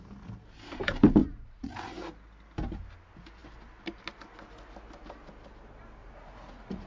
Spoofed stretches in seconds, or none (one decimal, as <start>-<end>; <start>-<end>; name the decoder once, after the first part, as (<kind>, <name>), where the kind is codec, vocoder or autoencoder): 1.2-1.7 (vocoder, Vocos); 6.0-6.9